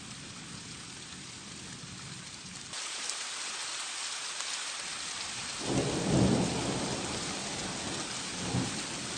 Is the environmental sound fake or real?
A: real